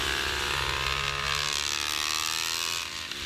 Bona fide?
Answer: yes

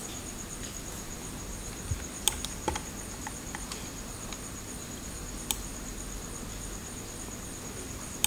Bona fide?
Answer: yes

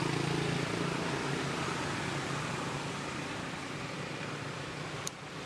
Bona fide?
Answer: yes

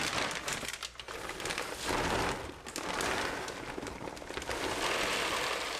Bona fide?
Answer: yes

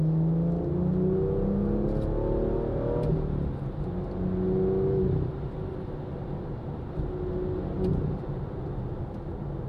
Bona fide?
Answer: yes